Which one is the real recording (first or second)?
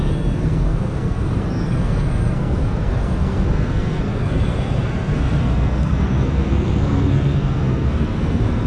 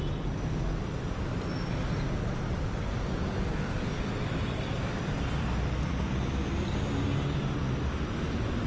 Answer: second